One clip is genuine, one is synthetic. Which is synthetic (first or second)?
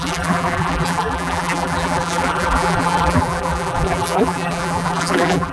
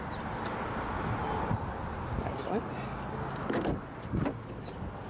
first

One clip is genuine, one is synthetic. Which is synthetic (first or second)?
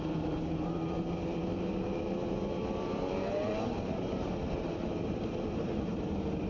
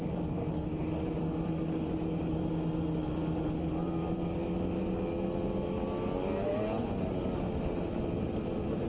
first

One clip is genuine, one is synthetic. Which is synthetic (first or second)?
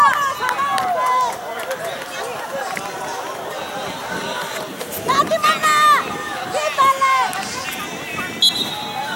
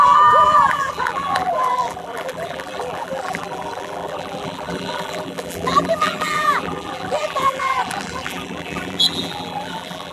second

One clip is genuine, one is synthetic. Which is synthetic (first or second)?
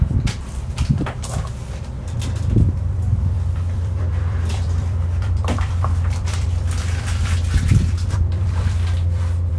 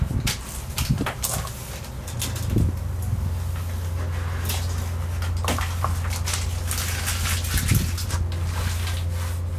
first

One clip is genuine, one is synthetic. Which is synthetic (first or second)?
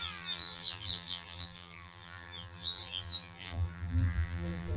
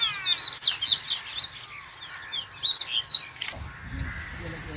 first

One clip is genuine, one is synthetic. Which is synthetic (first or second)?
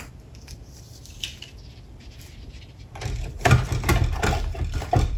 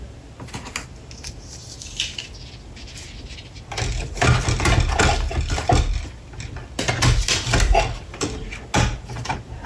first